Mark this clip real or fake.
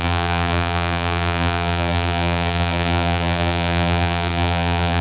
fake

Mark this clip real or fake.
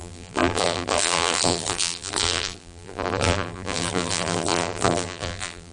fake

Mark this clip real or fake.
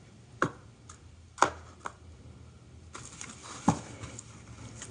real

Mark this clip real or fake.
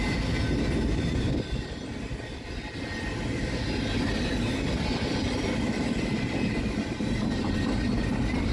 real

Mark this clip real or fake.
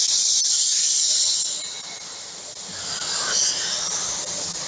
real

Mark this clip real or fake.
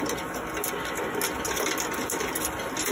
real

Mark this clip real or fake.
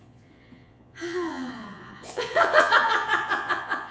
fake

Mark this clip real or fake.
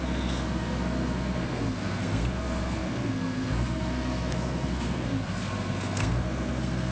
fake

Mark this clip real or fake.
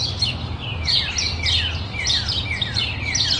real